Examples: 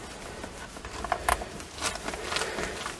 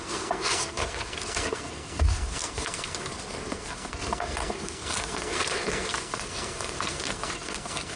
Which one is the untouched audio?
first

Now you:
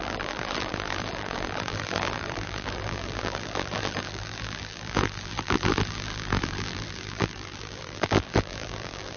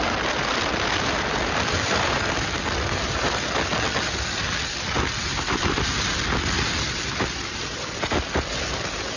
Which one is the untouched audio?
second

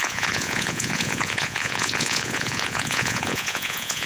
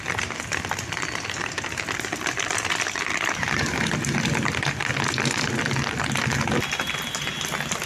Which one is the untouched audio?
second